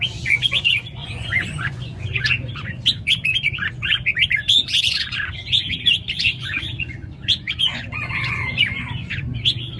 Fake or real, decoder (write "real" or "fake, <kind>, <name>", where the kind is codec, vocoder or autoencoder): fake, vocoder, Vocos